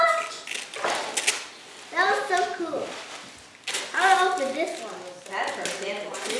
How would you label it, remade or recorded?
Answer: recorded